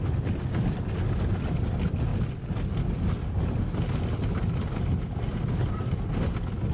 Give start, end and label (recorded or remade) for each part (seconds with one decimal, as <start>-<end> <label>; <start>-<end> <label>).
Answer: 0.0-6.7 recorded